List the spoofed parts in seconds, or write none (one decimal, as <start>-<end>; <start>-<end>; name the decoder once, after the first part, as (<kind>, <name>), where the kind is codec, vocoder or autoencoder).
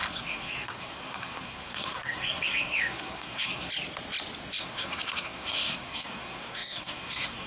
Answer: 0.0-3.7 (codec, SNAC); 4.6-7.5